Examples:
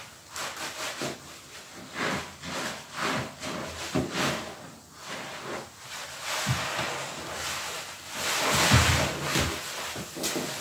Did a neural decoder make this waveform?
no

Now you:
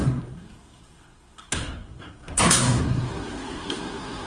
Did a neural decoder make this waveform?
yes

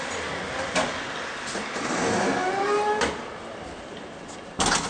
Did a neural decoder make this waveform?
no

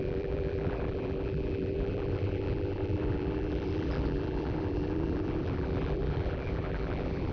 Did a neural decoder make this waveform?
yes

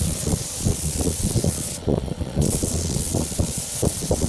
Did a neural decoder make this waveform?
yes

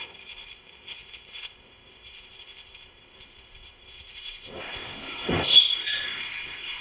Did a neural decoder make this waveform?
yes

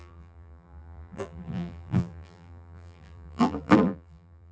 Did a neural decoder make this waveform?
yes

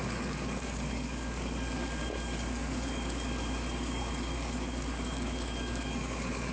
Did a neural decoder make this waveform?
yes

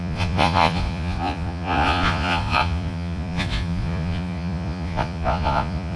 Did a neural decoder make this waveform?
yes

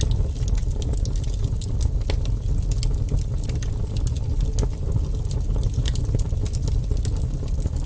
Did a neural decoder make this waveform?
no